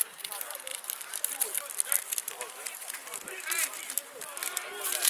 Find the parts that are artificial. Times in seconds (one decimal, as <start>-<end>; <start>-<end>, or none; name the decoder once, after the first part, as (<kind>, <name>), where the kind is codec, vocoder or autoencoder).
0.7-1.7 (vocoder, BigVGAN v2); 3.0-3.8